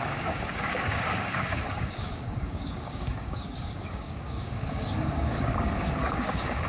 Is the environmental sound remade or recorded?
remade